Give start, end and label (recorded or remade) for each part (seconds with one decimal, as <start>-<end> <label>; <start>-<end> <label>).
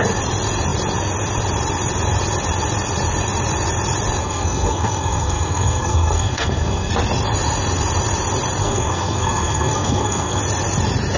0.0-4.2 recorded; 4.2-6.9 remade; 6.9-8.6 recorded; 8.6-10.4 remade; 10.4-11.2 recorded